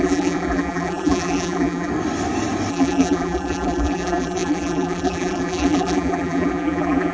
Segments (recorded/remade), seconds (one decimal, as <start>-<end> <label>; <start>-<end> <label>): 0.0-1.9 remade; 1.9-2.7 recorded; 2.7-7.1 remade